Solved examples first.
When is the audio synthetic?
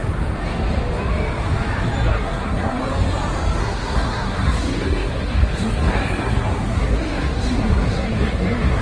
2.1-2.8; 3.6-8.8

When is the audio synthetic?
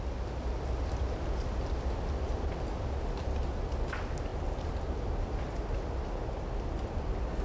none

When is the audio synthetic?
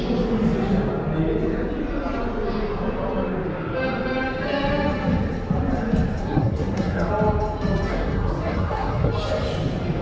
6.2-7.1; 7.9-9.1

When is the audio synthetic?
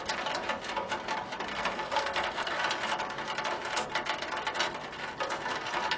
1.5-2.6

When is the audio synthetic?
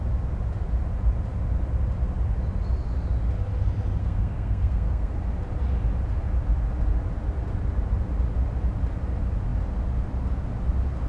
4.0-5.1